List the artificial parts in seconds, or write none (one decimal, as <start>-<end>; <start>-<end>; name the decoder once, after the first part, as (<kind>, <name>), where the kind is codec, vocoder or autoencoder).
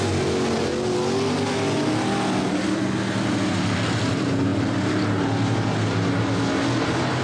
none